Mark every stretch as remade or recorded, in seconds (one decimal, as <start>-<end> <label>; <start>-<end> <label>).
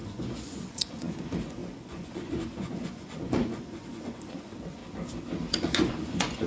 0.0-4.8 remade; 4.8-5.5 recorded; 5.5-6.5 remade